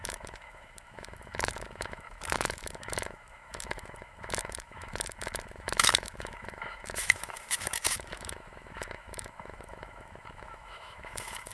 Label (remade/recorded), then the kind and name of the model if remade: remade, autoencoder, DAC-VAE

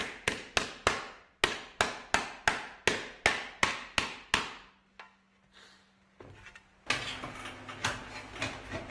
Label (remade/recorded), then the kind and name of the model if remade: recorded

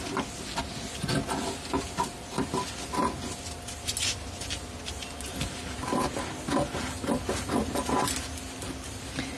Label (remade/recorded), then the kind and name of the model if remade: recorded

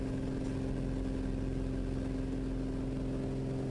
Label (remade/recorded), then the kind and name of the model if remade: recorded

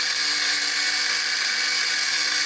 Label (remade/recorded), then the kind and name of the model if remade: recorded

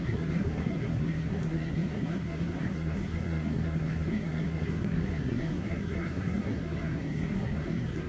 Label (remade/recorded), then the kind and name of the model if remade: remade, codec, SNAC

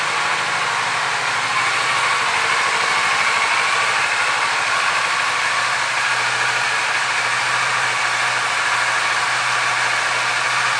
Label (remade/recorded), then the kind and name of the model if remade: recorded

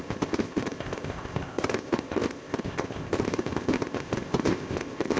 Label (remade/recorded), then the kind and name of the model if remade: remade, codec, ZipCodec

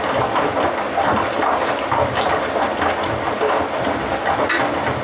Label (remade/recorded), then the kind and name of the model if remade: recorded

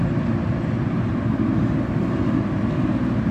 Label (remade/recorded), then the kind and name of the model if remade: recorded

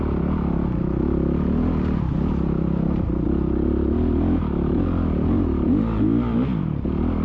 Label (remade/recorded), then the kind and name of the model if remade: recorded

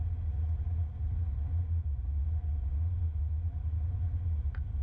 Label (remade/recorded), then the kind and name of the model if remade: recorded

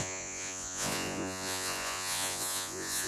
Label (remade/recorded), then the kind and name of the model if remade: remade, vocoder, Vocos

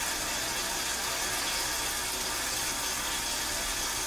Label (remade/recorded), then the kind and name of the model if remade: recorded